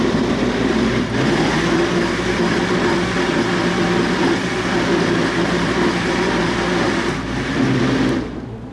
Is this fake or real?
fake